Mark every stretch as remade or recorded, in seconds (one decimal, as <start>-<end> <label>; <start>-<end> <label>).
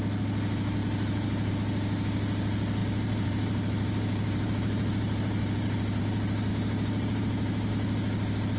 0.0-0.8 recorded; 0.8-1.5 remade; 1.5-2.8 recorded; 2.8-6.0 remade; 6.0-6.5 recorded; 6.5-7.7 remade; 7.7-8.6 recorded